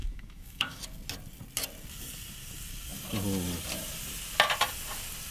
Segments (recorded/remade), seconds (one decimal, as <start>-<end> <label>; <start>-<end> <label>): 0.0-0.8 remade; 0.8-5.3 recorded